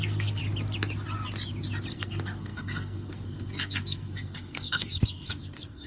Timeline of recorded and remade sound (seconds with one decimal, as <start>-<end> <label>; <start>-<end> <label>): 0.0-0.4 remade; 0.4-1.9 recorded; 1.9-5.9 remade